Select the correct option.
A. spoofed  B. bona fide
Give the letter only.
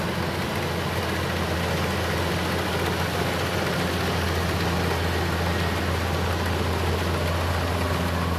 B